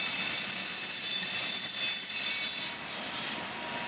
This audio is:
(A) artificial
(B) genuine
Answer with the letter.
B